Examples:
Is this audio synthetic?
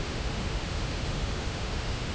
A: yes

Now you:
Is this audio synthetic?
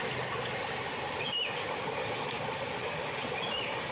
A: no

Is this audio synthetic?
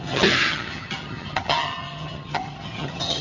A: yes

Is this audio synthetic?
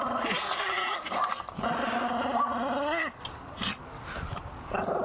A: no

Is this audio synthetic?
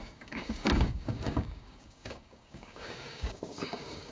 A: yes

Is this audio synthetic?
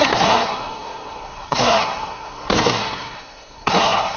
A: yes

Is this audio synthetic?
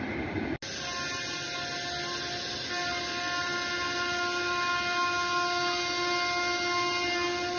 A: no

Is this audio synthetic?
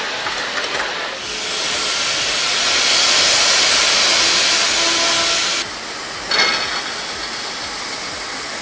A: no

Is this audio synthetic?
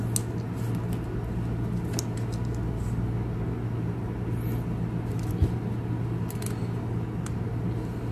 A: no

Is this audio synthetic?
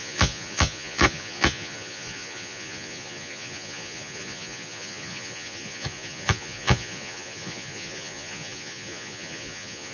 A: yes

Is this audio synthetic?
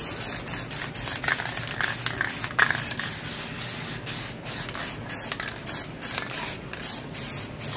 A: no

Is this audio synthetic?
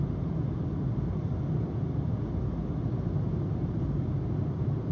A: no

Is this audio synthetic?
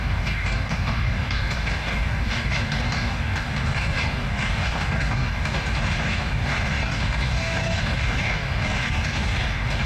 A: yes